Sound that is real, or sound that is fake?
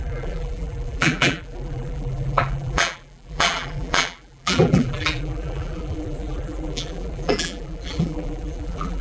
fake